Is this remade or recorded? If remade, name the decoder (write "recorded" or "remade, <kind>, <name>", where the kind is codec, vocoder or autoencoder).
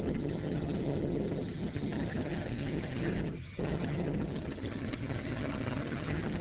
remade, vocoder, HiFi-GAN